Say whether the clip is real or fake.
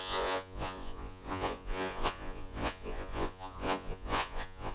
fake